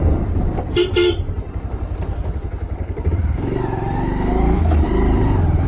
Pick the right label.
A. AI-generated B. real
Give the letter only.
A